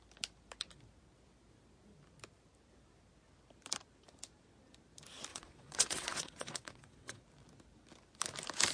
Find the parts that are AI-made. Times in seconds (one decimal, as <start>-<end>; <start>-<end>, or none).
5.3-7.2